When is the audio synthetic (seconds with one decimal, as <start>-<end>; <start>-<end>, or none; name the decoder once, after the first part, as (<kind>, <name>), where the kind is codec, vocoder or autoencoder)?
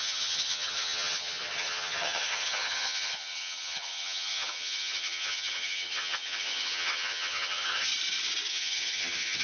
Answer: 0.0-7.9 (vocoder, HiFi-GAN); 8.5-9.4